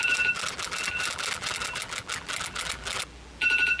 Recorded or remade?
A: remade